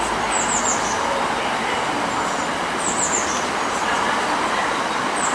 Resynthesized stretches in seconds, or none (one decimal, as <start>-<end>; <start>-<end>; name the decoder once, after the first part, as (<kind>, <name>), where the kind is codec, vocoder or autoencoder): none